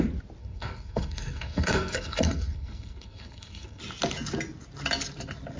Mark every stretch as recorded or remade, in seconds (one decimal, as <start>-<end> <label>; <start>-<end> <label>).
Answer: 0.0-0.4 recorded; 0.4-3.8 remade; 3.8-5.6 recorded